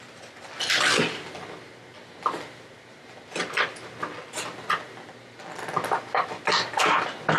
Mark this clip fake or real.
real